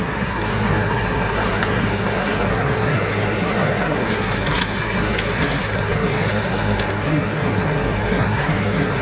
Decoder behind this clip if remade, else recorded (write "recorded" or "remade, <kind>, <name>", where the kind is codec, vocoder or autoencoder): remade, codec, SNAC